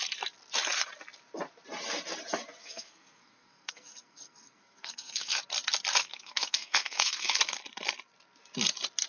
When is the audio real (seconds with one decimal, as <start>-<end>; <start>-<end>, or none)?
0.0-2.6; 5.4-6.0; 7.4-9.1